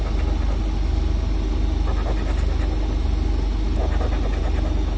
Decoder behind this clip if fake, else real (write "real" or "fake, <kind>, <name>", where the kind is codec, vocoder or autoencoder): real